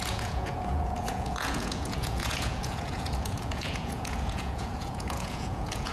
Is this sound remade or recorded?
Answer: remade